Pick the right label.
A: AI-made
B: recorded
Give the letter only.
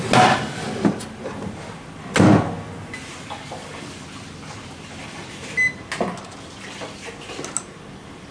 B